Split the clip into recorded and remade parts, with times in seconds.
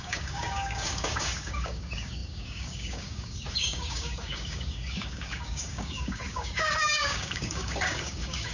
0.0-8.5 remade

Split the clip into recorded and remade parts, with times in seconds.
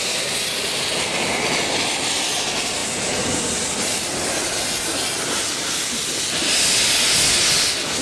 0.0-2.8 recorded; 2.8-3.4 remade; 3.4-8.0 recorded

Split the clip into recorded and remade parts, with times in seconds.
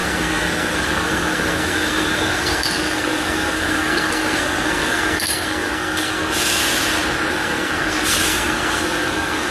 0.0-6.6 remade; 6.6-7.3 recorded; 7.3-9.5 remade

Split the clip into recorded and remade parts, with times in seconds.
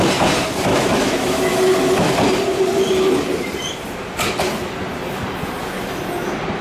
0.0-0.7 recorded; 0.7-1.4 remade; 1.4-6.6 recorded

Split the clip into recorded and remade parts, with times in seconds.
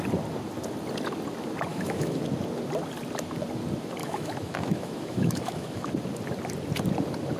0.0-1.7 recorded; 1.7-2.2 remade; 2.2-4.0 recorded; 4.0-5.9 remade; 5.9-7.4 recorded